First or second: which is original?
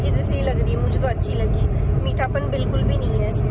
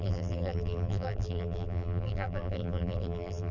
first